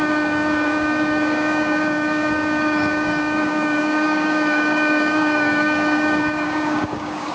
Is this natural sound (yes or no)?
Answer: no